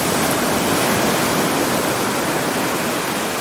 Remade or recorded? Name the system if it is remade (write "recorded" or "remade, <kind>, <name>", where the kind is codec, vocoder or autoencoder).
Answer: recorded